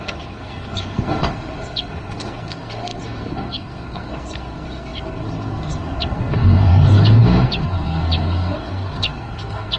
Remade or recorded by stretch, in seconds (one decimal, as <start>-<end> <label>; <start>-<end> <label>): 0.0-9.8 remade